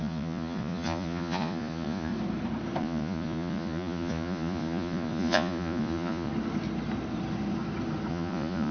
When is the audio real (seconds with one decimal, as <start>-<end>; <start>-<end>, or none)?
2.1-2.8; 6.3-8.1